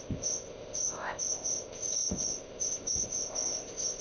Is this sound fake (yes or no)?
yes